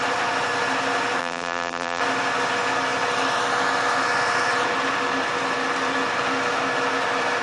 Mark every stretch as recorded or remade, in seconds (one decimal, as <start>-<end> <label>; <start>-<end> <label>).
0.0-1.2 recorded; 1.2-2.0 remade; 2.0-7.4 recorded